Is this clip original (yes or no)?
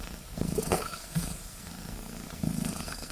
no